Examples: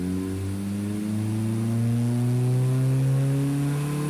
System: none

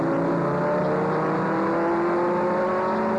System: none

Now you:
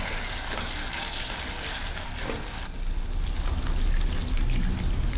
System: none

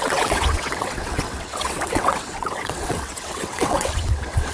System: vocoder, WaveNeXt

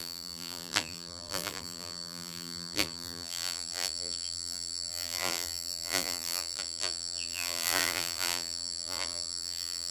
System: vocoder, BigVGAN v2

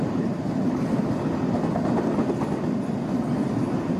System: none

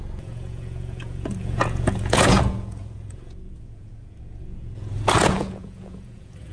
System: vocoder, Vocos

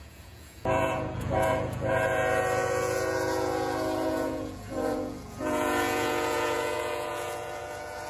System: vocoder, Vocos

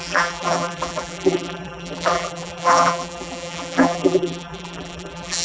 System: vocoder, BigVGAN v2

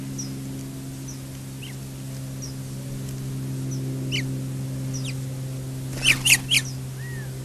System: none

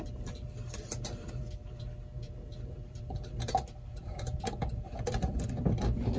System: vocoder, BigVGAN v2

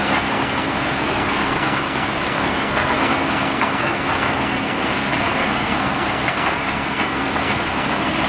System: codec, SNAC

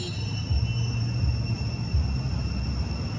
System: none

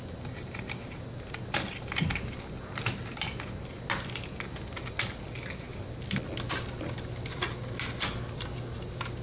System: none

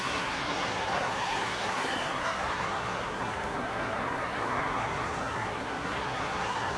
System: codec, SNAC